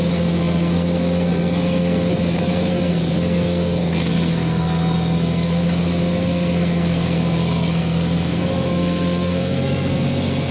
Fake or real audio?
fake